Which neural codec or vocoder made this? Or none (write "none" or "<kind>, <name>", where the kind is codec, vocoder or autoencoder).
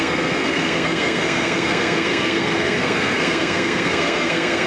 codec, SNAC